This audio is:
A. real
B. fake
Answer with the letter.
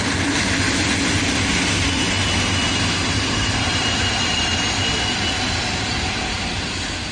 A